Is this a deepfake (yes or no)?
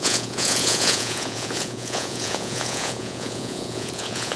yes